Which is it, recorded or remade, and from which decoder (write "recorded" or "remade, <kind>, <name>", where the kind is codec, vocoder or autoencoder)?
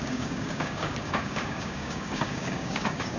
remade, codec, DAC